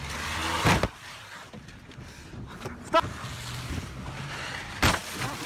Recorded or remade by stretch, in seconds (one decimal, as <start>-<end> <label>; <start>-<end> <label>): 0.0-5.5 recorded